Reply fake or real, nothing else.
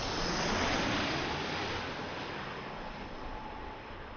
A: real